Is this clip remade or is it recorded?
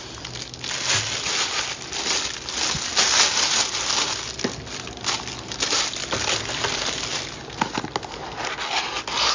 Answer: recorded